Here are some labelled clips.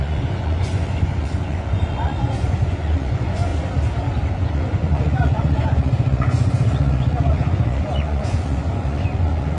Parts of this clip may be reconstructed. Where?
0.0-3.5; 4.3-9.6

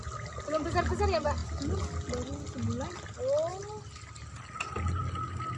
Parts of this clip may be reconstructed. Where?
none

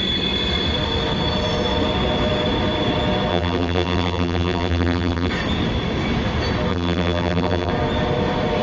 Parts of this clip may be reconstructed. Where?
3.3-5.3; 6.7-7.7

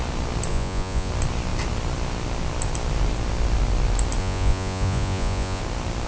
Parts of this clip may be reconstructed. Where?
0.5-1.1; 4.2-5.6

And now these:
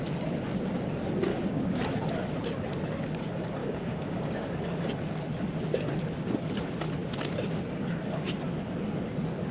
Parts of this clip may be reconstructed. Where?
1.3-1.8; 3.6-4.6

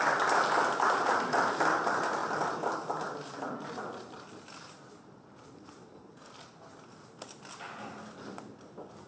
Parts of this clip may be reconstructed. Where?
none